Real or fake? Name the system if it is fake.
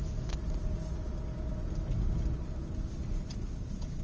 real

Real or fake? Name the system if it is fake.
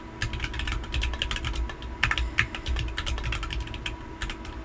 real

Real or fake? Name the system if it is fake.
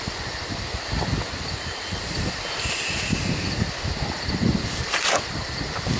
real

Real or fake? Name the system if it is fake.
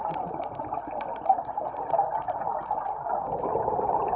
fake, vocoder, BigVGAN v2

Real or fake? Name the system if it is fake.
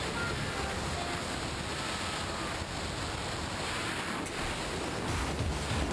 real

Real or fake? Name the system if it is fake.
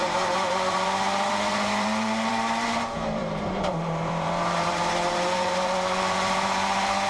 fake, vocoder, BigVGAN v2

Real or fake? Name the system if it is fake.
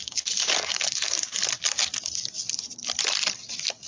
real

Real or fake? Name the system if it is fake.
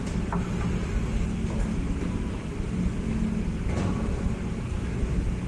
real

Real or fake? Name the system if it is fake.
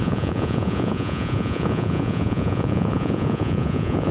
fake, vocoder, Vocos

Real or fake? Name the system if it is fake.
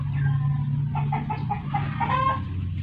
real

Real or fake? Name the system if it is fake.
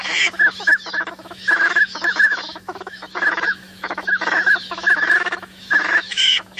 fake, autoencoder, DAC-VAE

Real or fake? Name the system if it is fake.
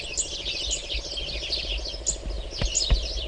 real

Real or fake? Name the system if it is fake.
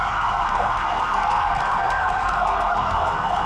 fake, codec, SNAC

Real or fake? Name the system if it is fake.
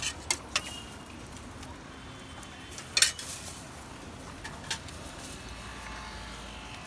real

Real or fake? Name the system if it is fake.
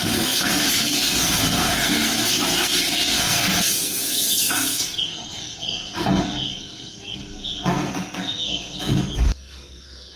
fake, codec, SNAC